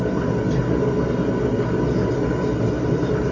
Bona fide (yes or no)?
yes